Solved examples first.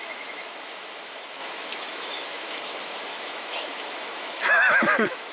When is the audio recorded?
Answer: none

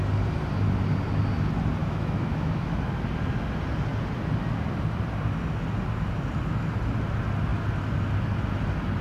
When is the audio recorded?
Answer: 0.0-1.8; 2.9-9.0